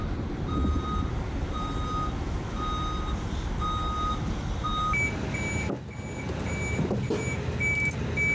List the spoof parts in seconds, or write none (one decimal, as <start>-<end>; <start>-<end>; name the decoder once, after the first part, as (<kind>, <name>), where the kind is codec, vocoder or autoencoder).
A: none